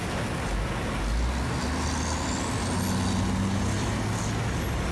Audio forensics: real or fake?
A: real